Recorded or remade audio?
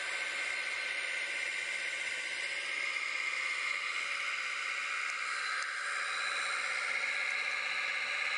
recorded